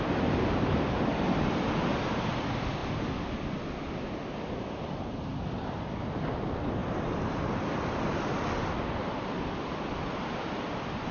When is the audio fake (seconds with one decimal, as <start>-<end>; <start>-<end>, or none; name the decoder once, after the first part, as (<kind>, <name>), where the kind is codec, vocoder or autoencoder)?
none

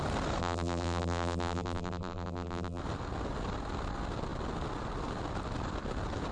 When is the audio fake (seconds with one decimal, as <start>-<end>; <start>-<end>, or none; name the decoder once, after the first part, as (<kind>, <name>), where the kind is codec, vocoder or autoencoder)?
0.4-2.8 (vocoder, BigVGAN v2)

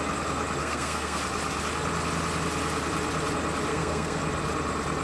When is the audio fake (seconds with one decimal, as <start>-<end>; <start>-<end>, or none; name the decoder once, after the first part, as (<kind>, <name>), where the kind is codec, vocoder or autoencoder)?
0.6-1.2 (codec, SNAC); 3.7-4.2

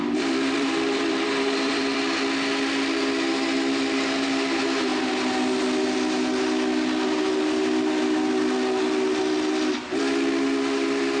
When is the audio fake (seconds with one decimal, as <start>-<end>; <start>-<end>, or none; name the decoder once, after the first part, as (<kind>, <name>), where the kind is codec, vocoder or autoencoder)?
0.0-2.0 (vocoder, BigVGAN v2)

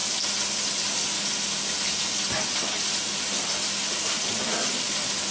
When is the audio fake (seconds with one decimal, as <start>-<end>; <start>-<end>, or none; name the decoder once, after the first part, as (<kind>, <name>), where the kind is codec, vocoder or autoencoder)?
none

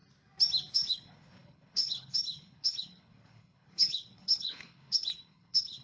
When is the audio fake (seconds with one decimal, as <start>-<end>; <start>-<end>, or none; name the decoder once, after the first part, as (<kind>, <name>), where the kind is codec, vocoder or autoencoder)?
0.7-5.8 (codec, HILCodec)

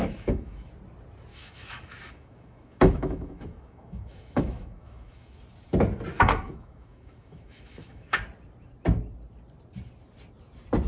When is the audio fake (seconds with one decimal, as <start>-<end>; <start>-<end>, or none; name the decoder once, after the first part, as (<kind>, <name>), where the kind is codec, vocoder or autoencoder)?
0.0-0.7 (autoencoder, DAC-VAE); 1.3-5.4; 6.1-8.2